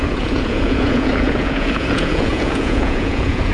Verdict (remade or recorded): remade